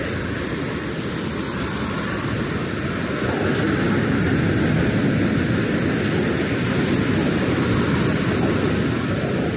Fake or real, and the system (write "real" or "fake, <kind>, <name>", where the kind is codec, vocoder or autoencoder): real